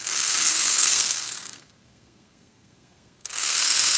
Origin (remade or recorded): remade